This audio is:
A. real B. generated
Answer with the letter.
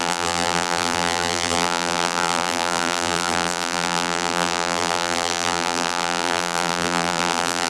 B